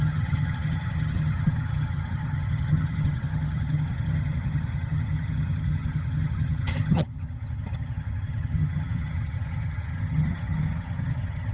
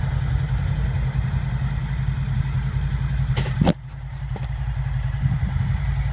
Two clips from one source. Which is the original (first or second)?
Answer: second